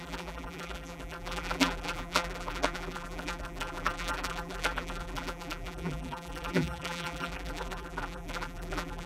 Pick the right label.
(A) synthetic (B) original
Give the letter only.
A